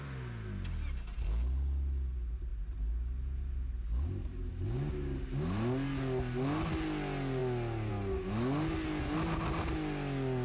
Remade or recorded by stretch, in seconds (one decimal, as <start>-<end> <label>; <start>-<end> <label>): 0.0-10.4 recorded